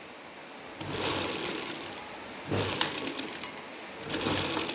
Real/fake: real